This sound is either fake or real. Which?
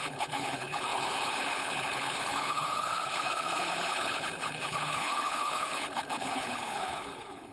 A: fake